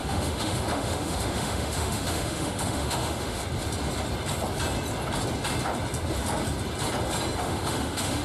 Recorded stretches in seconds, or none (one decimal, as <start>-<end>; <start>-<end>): 3.4-7.4